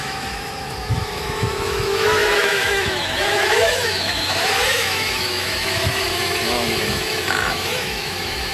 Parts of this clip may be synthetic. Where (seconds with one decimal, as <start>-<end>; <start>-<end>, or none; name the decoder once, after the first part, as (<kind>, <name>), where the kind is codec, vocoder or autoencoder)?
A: 0.0-8.5 (autoencoder, DAC-VAE)